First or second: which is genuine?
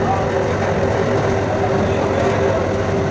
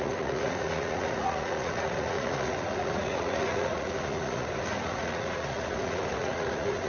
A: first